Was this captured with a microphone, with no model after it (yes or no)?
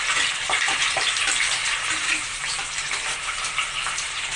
no